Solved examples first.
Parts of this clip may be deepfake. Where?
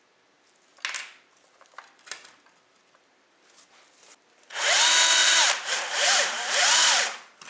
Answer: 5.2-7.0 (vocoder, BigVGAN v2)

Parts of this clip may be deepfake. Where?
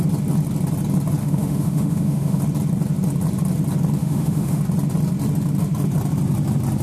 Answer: 1.2-2.4 (autoencoder, DAC-VAE); 4.0-4.6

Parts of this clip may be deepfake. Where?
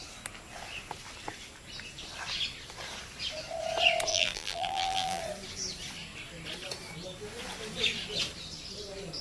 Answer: 4.1-5.2 (vocoder, BigVGAN v2)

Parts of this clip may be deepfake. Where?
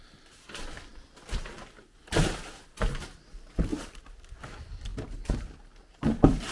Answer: 0.9-1.5 (vocoder, BigVGAN v2); 3.7-4.3; 4.9-5.5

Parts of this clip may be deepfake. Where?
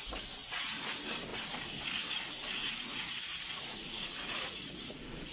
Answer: 0.4-0.9 (vocoder, Vocos); 2.6-5.3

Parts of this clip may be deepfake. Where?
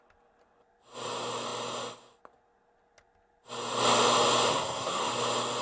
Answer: 4.5-5.1 (codec, SNAC)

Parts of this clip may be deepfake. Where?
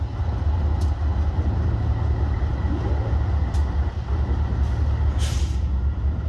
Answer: none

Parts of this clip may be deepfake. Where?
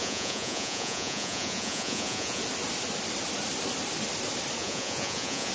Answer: 0.0-2.4 (vocoder, Vocos); 4.6-5.5